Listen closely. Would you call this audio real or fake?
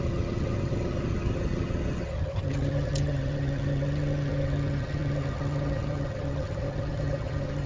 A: fake